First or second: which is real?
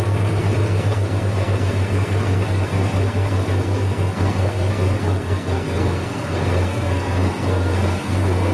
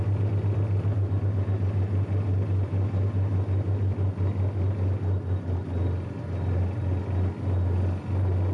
second